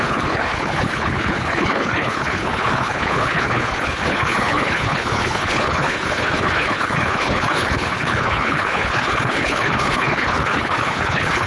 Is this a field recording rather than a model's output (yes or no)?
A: no